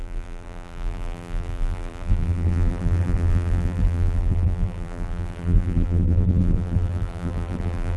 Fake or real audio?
fake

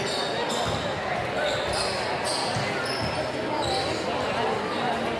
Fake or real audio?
real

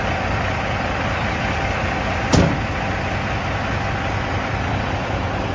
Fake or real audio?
real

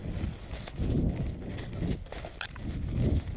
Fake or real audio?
real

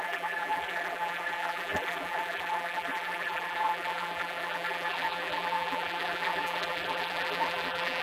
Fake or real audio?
fake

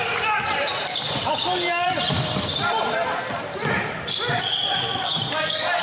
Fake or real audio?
fake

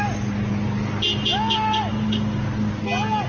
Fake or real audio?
real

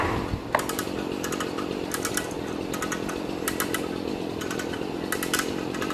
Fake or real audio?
real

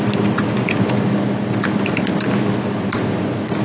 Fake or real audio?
real